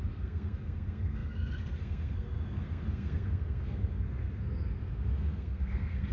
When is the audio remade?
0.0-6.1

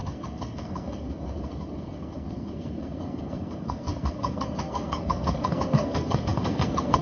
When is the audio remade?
0.0-7.0

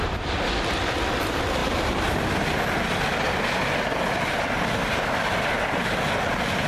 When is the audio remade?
none

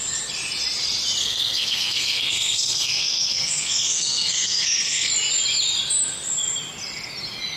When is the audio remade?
1.2-5.1

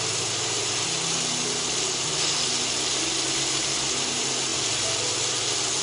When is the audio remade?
none